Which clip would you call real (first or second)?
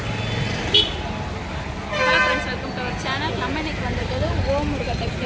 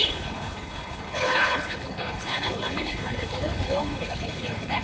first